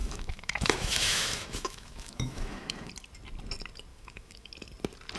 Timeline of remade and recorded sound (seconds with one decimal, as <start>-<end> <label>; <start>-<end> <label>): 0.0-2.9 remade; 2.9-3.9 recorded; 3.9-4.5 remade; 4.5-5.2 recorded